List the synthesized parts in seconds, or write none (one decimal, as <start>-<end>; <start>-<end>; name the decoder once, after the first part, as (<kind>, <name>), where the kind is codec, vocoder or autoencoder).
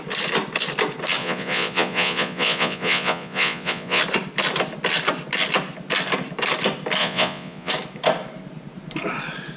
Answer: 1.2-4.0 (vocoder, Vocos); 7.0-7.7